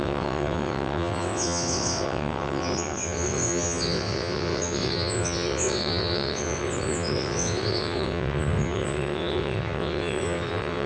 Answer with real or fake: fake